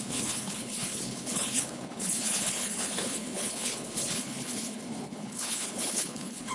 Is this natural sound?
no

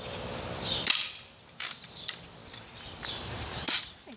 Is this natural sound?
yes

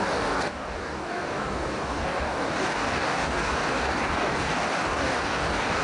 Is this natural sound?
no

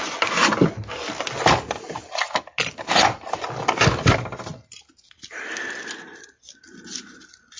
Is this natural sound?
yes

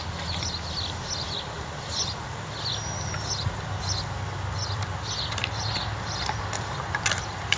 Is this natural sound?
yes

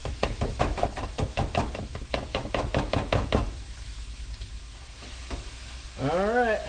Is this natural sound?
no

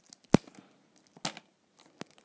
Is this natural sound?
yes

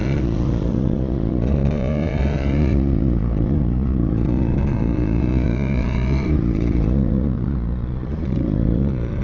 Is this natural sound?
no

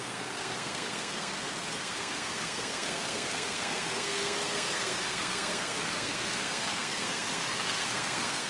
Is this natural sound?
no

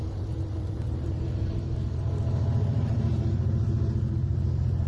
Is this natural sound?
no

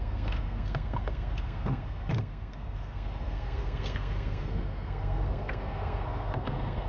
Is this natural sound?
no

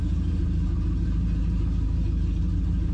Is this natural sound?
yes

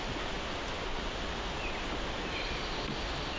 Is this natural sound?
yes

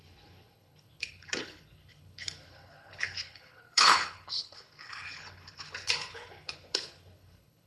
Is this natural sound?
no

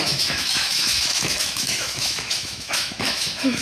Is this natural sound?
no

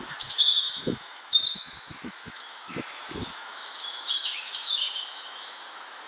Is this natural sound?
no